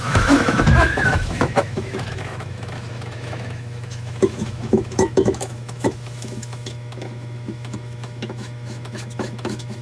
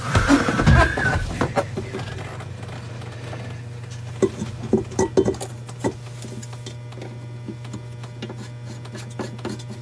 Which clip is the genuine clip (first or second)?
second